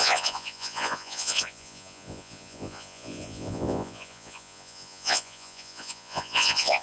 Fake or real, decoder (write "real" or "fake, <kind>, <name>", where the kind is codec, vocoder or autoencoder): fake, vocoder, Vocos